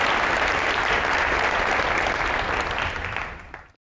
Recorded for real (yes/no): yes